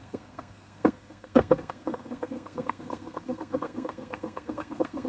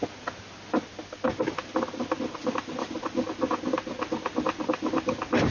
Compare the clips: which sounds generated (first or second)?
first